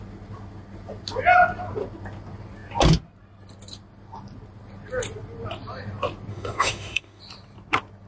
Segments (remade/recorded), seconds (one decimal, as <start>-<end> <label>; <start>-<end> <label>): 0.0-6.3 recorded; 6.3-7.2 remade; 7.2-8.1 recorded